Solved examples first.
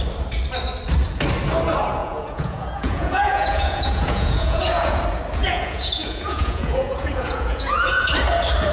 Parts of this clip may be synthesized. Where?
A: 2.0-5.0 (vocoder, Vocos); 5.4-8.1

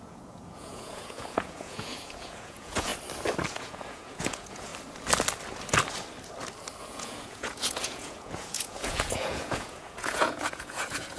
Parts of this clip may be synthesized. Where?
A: 0.0-2.9 (vocoder, Vocos); 3.5-4.7; 6.8-11.2

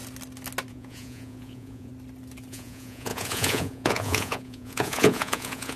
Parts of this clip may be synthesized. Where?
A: 0.7-1.9 (vocoder, Vocos); 2.5-5.8

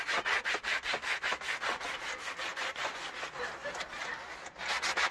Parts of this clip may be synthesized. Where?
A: 2.5-3.1 (vocoder, Vocos)